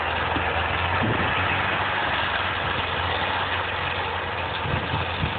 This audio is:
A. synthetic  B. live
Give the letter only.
B